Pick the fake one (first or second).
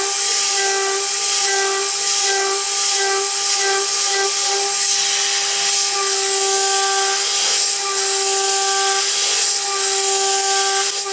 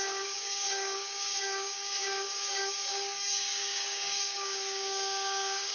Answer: second